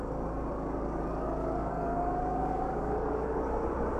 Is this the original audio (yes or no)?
no